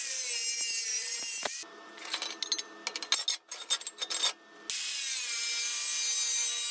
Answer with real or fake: real